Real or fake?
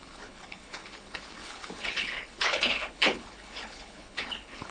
fake